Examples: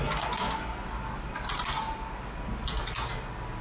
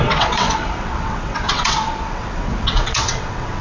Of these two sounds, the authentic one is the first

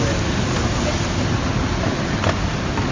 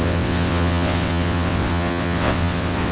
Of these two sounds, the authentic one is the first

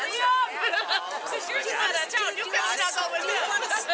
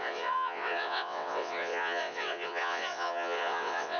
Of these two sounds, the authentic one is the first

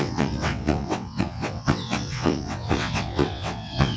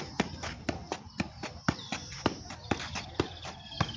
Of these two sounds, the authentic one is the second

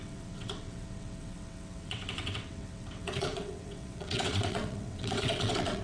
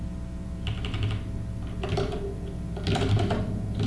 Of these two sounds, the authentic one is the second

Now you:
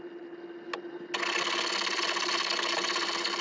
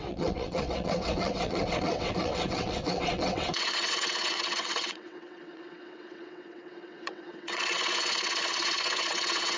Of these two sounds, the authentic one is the first